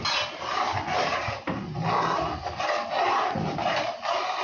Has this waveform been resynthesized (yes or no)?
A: no